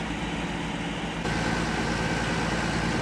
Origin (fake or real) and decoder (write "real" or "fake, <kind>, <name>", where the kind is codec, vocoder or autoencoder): real